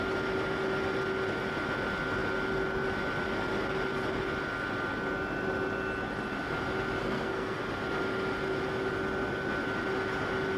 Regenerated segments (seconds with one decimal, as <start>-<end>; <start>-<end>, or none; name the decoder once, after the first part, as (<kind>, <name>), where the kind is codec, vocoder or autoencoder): 7.0-7.6 (codec, SNAC)